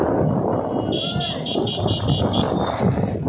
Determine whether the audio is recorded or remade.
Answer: recorded